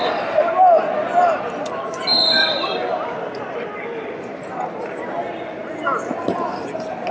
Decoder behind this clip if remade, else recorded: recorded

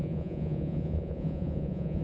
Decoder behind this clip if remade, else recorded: remade, vocoder, Vocos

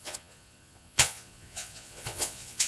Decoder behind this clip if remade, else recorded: remade, vocoder, Vocos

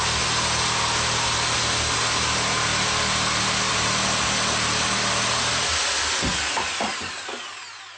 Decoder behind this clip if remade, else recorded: recorded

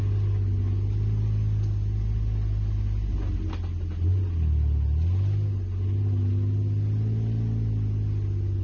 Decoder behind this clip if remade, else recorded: recorded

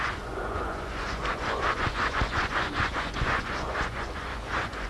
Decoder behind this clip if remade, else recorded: remade, vocoder, Vocos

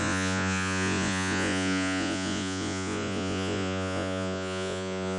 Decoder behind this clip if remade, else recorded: remade, vocoder, Vocos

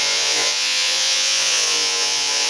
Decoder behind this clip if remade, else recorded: remade, vocoder, Vocos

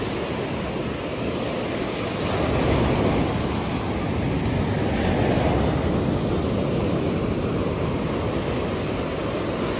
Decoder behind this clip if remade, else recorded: recorded